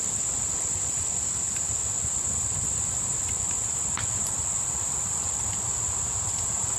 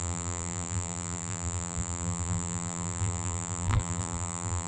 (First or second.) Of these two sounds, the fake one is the second